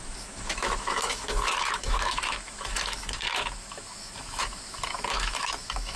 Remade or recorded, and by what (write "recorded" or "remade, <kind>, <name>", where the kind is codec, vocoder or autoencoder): remade, autoencoder, DAC-VAE